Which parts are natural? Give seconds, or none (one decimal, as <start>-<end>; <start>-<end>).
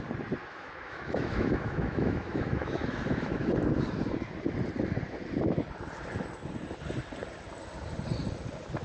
0.0-0.4; 3.5-8.8